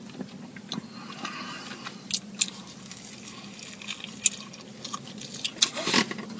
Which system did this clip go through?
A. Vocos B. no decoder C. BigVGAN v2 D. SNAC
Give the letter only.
B